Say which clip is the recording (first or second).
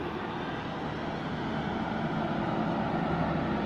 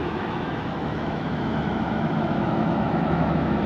first